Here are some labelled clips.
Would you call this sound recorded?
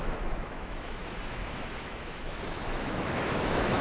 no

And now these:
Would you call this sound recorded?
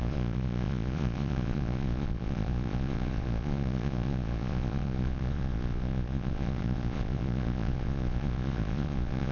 no